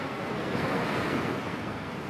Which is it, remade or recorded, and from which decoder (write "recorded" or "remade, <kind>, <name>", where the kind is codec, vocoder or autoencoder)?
remade, codec, SNAC